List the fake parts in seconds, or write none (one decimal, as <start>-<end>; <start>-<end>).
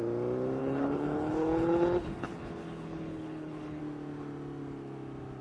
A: 0.6-3.8